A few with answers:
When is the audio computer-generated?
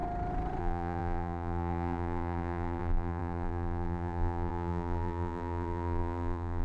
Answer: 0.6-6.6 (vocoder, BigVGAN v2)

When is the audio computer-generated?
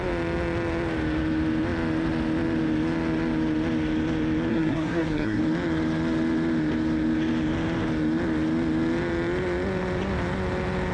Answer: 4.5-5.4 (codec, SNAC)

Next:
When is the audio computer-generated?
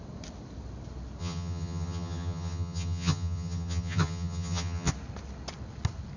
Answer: 1.2-4.9 (vocoder, HiFi-GAN)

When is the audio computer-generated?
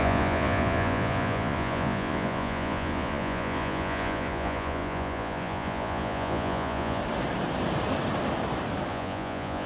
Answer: 0.0-7.0 (vocoder, Vocos); 8.9-9.7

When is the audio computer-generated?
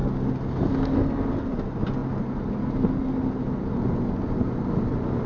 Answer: none